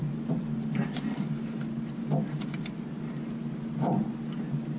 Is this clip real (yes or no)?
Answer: yes